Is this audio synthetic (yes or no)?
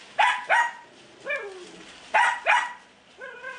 no